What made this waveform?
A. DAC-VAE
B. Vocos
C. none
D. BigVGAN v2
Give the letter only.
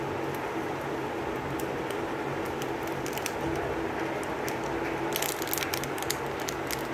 C